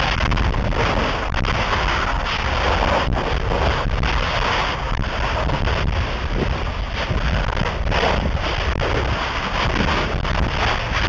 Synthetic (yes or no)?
no